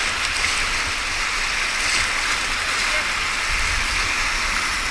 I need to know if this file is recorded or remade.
recorded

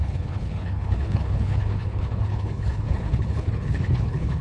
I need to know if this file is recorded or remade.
remade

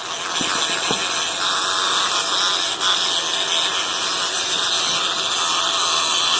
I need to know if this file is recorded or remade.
recorded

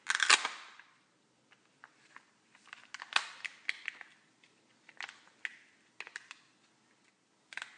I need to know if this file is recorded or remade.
recorded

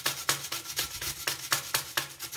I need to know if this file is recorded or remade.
recorded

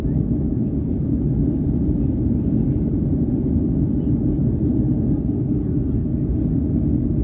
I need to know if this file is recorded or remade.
recorded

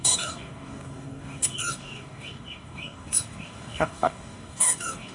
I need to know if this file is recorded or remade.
remade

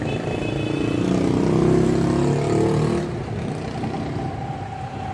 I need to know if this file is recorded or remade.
recorded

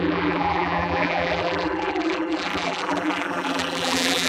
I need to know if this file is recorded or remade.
remade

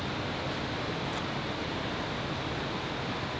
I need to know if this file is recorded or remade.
recorded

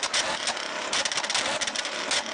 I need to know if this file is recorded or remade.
recorded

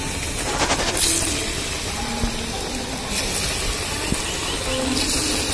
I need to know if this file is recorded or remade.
recorded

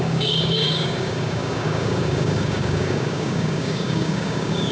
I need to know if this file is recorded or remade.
remade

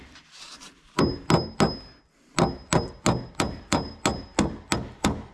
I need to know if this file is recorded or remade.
recorded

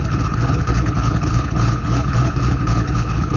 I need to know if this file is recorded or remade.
remade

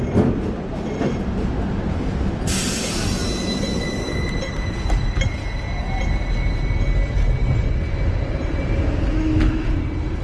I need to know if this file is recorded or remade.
recorded